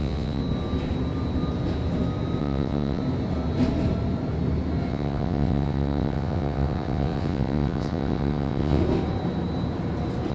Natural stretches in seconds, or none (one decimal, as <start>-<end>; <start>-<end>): 0.4-2.4; 3.0-4.9; 8.8-10.3